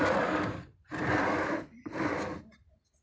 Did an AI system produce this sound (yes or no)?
no